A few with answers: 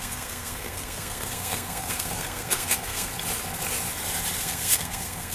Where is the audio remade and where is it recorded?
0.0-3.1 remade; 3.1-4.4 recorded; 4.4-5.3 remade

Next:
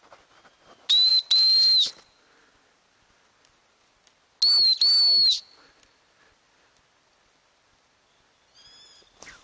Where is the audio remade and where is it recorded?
0.0-9.4 recorded